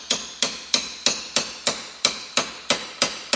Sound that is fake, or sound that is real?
real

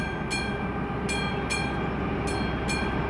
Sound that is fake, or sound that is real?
real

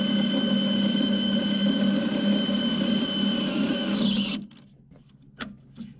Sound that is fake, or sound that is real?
real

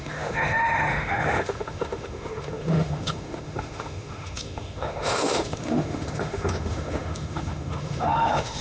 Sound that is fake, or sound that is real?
fake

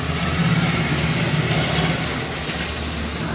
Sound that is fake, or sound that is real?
real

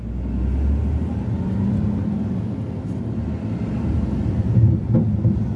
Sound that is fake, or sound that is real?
real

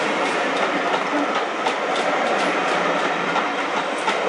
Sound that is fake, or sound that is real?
real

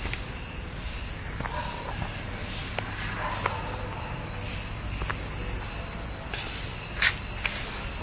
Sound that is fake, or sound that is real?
real